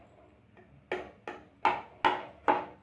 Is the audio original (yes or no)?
yes